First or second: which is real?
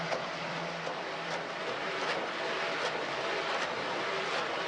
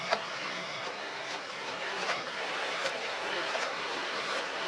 first